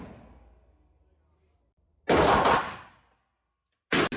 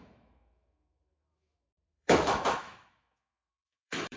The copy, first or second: second